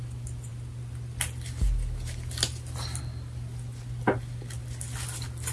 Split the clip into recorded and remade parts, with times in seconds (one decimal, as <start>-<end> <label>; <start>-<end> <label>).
0.0-5.5 recorded